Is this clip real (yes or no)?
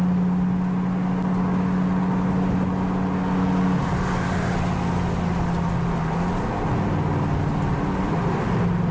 yes